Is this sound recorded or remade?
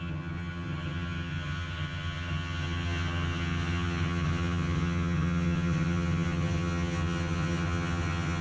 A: remade